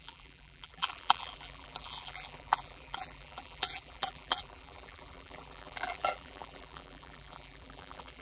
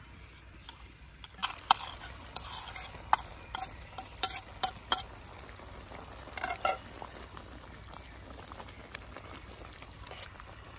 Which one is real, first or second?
second